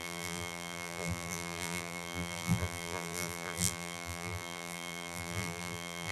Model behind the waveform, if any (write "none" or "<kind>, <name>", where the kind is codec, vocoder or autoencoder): vocoder, BigVGAN v2